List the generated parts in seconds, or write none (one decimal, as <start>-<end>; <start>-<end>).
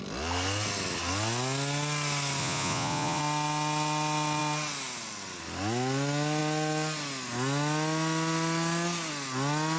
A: 2.4-3.2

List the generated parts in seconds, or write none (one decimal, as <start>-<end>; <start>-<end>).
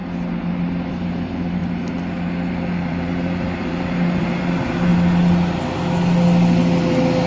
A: 0.9-1.6; 2.5-4.9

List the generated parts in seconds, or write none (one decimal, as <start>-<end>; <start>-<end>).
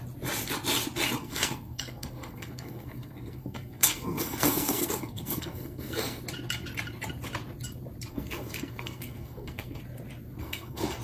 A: 1.2-6.2; 8.1-9.8; 10.4-11.0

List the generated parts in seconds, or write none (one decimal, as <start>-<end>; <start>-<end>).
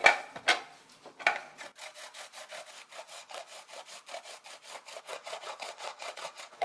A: 3.0-3.5; 5.0-6.6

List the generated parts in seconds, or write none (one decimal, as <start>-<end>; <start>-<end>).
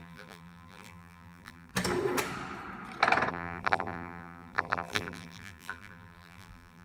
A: 0.0-1.7; 3.3-6.8